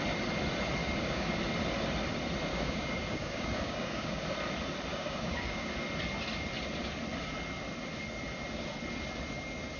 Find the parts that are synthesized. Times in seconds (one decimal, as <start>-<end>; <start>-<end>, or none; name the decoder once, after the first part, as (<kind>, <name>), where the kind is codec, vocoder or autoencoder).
0.8-1.4 (codec, DAC); 2.5-4.2; 4.9-5.7